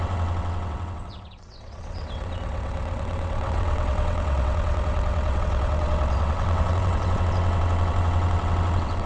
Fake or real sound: fake